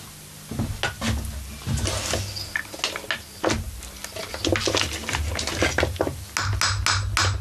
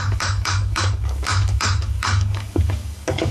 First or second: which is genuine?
first